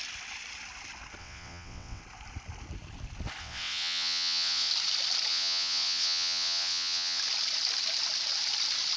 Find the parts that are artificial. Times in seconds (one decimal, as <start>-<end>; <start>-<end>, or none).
1.2-2.0; 3.4-4.7; 5.3-7.2